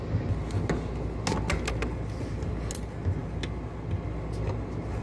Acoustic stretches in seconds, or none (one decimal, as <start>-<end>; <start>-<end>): 0.0-5.0